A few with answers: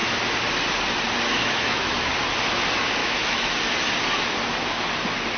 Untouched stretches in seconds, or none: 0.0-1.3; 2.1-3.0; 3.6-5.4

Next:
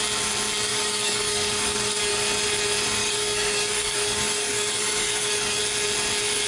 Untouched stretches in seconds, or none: 0.0-0.7; 2.0-3.0; 5.6-6.5

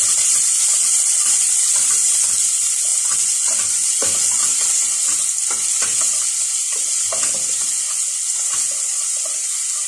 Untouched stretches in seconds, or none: 0.0-9.9

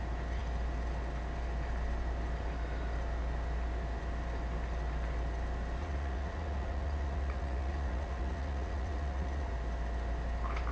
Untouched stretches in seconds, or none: 0.0-5.8; 9.5-10.7